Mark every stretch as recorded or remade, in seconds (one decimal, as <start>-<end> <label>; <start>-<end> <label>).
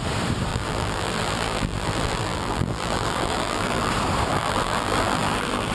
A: 0.0-0.5 recorded; 0.5-3.9 remade; 3.9-4.3 recorded; 4.3-5.7 remade